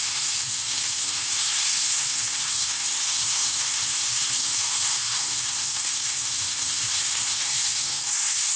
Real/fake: fake